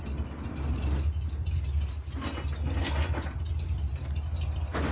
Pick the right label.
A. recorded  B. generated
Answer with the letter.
A